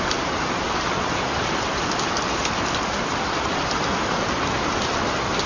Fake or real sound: real